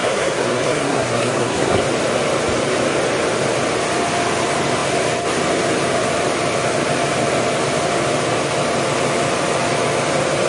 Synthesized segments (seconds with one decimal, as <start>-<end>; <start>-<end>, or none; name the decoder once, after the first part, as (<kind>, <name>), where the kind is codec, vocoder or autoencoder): 0.0-1.8 (codec, SNAC)